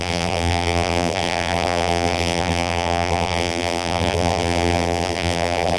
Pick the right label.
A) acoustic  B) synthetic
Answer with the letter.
B